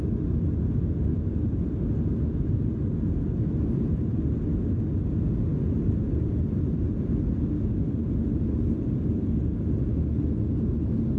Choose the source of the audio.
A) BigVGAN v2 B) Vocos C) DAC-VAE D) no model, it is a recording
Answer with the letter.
D